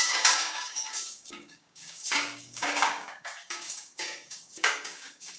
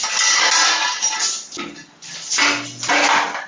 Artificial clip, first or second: first